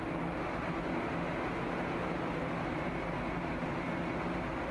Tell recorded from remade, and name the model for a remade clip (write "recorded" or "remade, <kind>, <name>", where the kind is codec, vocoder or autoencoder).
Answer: recorded